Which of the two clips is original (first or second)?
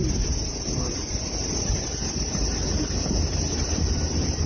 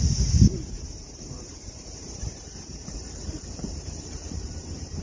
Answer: first